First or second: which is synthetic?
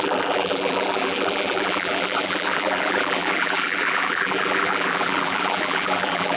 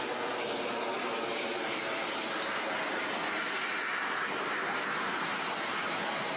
first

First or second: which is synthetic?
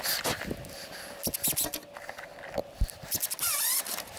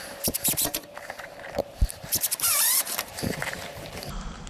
second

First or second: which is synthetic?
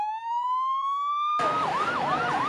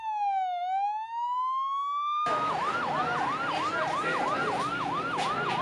first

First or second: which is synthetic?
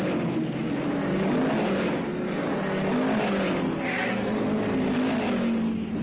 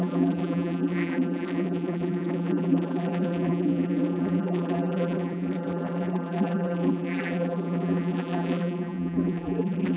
second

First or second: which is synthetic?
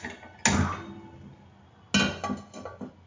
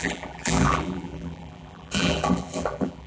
second